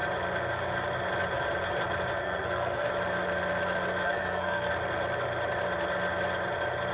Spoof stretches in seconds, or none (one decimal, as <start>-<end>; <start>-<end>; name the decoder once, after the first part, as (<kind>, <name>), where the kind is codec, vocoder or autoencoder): 2.2-2.9 (codec, SNAC); 4.0-4.7